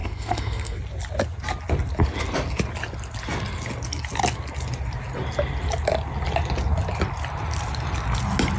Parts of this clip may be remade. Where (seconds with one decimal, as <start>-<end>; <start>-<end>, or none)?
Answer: 0.0-0.8